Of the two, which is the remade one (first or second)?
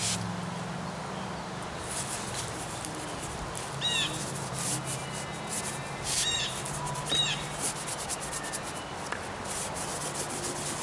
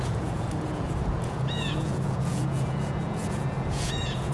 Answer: second